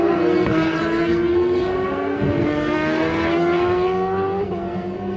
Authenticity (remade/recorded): remade